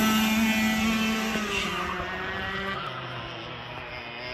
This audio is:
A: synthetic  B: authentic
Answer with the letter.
B